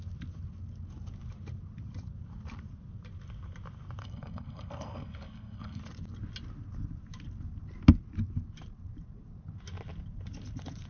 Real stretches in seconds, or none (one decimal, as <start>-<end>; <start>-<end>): 0.0-4.0; 5.8-10.9